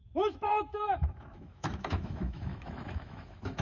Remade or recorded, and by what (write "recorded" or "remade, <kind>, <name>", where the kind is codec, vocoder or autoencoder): remade, autoencoder, DAC-VAE